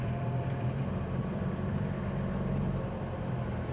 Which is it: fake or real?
fake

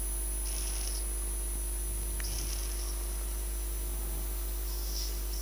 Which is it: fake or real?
real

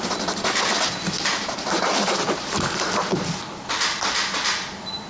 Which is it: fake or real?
real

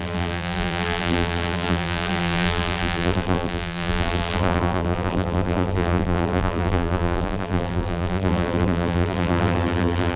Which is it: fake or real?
fake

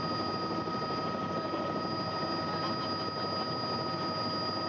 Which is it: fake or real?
real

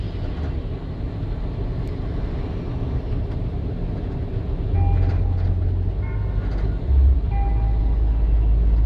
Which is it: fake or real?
real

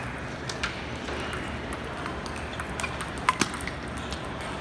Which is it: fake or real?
real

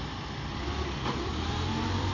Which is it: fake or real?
fake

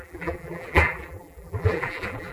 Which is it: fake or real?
fake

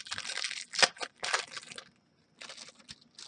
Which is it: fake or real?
real